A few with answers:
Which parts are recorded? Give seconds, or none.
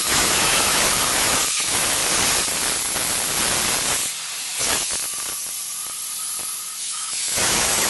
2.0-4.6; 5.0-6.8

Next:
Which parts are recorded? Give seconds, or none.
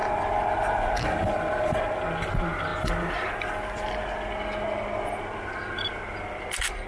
0.0-6.9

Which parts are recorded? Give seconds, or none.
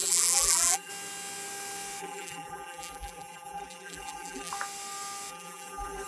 0.9-2.0; 4.5-5.3